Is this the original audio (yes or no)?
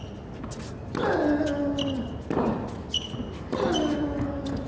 yes